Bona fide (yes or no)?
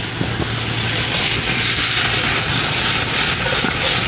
yes